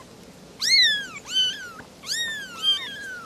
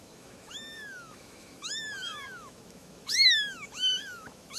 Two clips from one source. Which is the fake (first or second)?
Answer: second